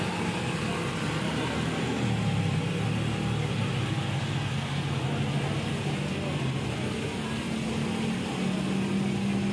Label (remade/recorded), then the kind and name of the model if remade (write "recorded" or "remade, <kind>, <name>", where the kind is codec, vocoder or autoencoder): recorded